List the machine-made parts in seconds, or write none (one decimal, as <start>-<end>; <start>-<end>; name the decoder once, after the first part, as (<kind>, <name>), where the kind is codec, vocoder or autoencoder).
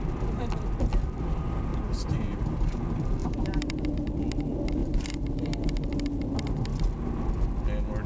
1.7-2.8 (vocoder, BigVGAN v2); 3.2-4.1; 4.8-5.4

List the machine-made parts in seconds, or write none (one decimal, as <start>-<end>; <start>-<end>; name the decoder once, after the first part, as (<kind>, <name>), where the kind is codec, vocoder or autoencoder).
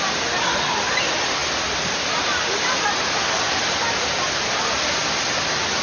none